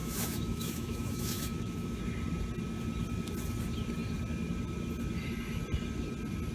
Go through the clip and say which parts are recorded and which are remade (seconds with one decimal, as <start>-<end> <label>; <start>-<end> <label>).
0.0-2.0 remade; 2.0-6.5 recorded